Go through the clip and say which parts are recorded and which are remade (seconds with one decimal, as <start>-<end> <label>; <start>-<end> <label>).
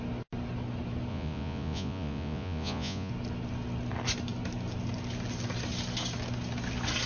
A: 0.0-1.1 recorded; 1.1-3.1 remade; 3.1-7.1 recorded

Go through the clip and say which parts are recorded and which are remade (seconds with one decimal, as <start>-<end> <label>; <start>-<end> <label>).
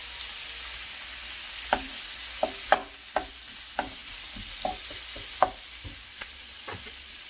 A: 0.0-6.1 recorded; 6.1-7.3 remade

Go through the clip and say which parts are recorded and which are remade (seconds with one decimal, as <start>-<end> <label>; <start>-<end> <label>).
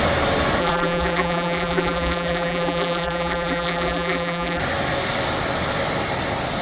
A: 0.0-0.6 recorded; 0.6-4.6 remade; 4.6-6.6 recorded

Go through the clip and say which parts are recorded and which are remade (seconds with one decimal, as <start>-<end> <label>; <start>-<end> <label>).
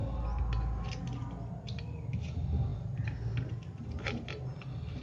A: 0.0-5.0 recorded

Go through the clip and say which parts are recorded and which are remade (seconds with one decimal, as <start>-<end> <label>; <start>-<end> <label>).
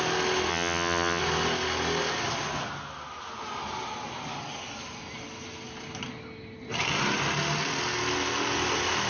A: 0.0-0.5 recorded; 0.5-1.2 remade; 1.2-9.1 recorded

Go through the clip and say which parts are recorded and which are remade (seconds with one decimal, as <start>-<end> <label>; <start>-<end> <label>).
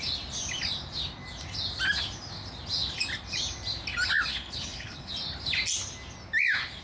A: 0.0-4.3 recorded; 4.3-5.1 remade; 5.1-6.8 recorded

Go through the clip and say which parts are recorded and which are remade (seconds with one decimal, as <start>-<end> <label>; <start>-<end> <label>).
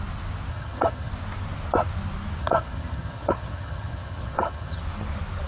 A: 0.0-0.5 recorded; 0.5-1.1 remade; 1.1-2.4 recorded; 2.4-4.8 remade; 4.8-5.5 recorded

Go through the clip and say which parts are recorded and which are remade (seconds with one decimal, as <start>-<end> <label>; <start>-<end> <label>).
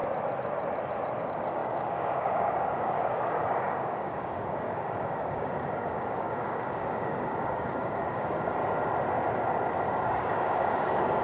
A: 0.0-1.2 recorded; 1.2-8.6 remade; 8.6-10.0 recorded; 10.0-11.2 remade